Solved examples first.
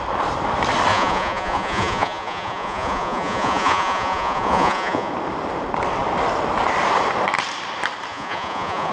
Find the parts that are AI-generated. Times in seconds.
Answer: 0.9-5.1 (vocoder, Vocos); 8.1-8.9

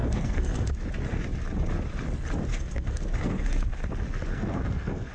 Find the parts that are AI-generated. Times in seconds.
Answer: 0.0-0.7 (codec, SNAC); 2.5-3.7; 4.3-5.1

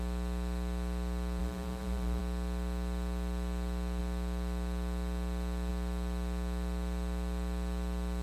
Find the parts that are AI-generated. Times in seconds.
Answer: 1.4-2.2 (vocoder, BigVGAN v2)